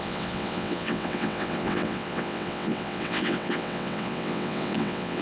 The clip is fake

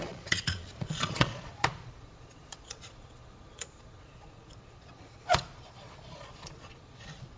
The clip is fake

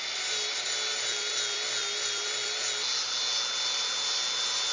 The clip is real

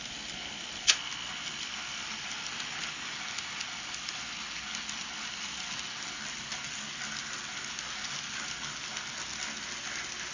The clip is real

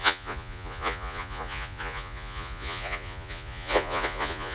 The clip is fake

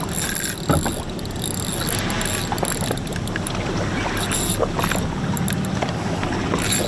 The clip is real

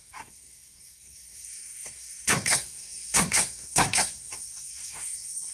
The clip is fake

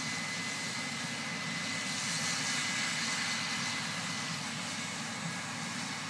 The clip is real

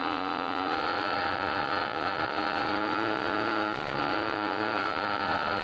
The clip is fake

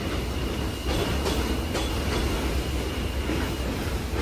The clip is real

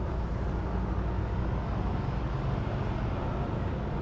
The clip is real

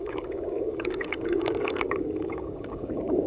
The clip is fake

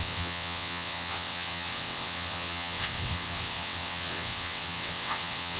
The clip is fake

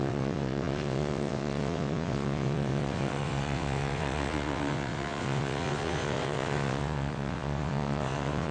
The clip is fake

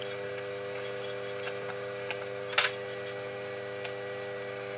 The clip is real